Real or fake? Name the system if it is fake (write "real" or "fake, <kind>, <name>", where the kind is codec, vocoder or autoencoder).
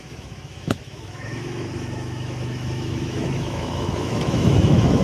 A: fake, autoencoder, DAC-VAE